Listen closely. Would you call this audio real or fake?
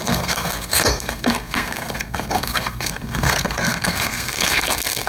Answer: fake